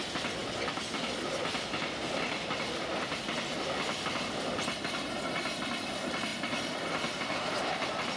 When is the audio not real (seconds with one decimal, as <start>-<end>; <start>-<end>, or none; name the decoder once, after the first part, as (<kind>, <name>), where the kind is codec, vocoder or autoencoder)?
none